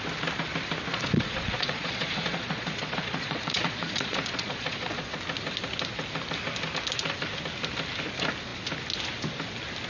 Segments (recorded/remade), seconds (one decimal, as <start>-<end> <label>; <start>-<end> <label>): 0.0-0.9 recorded; 0.9-5.2 remade; 5.2-9.9 recorded